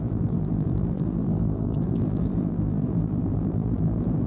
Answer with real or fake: fake